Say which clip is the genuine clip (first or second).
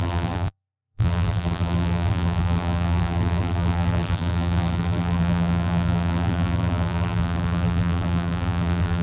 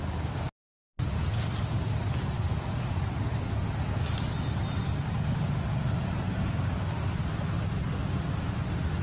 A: second